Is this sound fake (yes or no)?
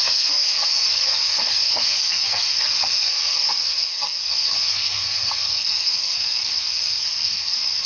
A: yes